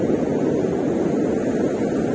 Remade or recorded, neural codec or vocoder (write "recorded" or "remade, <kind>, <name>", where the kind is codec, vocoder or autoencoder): recorded